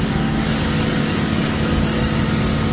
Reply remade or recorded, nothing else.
remade